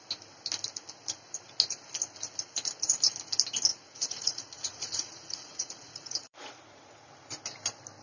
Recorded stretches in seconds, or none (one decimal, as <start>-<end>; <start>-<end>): 0.0-3.7; 7.1-8.0